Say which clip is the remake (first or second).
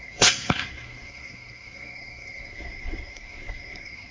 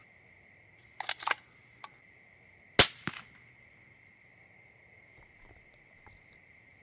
first